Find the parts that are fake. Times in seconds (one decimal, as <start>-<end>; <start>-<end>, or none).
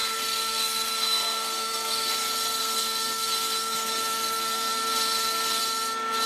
0.0-2.1; 2.6-5.6